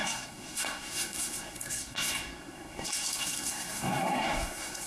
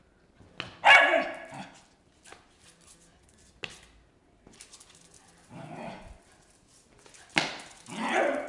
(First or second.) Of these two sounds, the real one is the second